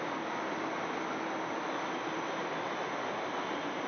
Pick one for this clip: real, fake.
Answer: real